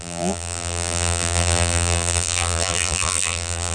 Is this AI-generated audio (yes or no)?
yes